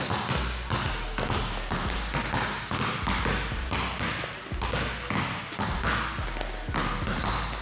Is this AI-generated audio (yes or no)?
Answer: no